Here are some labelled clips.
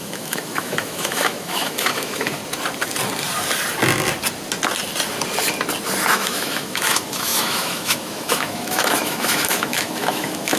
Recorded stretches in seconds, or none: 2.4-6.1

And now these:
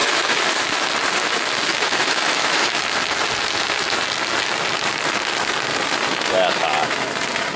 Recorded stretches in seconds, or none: 0.6-1.7; 2.8-7.6